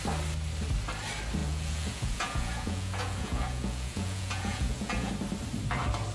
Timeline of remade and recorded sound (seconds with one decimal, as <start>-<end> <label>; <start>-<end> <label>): 0.0-1.4 recorded; 1.4-5.1 remade; 5.1-6.1 recorded